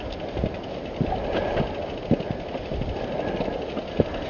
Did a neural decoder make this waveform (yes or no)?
no